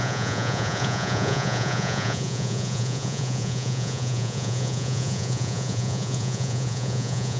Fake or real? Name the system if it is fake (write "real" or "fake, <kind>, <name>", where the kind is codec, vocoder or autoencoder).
fake, vocoder, Vocos